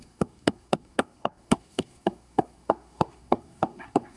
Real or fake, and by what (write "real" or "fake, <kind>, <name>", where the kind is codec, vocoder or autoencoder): fake, codec, SNAC